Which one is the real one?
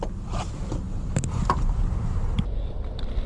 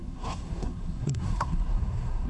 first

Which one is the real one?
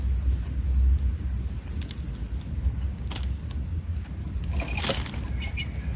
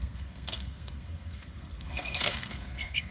first